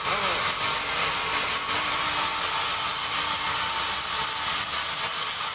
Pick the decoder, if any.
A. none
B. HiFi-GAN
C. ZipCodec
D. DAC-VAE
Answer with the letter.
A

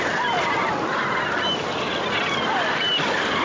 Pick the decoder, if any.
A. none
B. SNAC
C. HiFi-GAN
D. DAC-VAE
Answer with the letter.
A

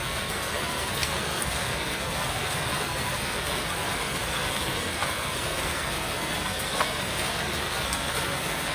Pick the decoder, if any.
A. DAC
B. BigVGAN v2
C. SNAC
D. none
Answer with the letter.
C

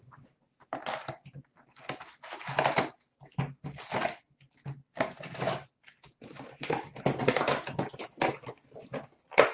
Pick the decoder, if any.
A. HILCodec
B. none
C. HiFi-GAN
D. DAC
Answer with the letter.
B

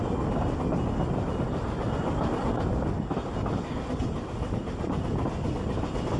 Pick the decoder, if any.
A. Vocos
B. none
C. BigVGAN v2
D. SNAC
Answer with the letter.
B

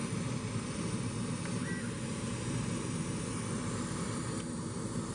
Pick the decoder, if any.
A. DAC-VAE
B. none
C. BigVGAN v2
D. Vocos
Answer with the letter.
B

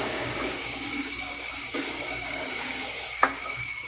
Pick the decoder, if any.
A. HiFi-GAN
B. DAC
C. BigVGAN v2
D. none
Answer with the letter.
B